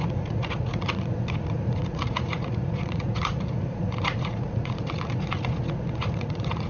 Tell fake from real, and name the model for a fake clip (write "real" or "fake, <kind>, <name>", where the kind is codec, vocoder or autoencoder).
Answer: fake, vocoder, Vocos